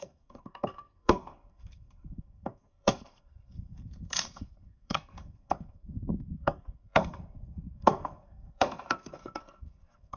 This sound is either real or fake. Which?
fake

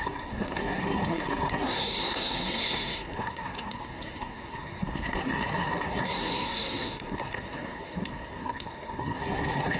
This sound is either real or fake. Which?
fake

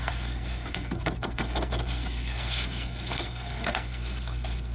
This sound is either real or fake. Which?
fake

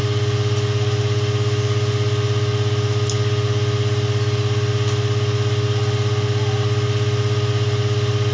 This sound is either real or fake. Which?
real